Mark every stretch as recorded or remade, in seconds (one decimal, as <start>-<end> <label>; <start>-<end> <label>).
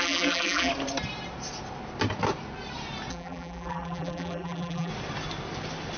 0.0-0.7 remade; 0.7-3.1 recorded; 3.1-4.9 remade; 4.9-6.0 recorded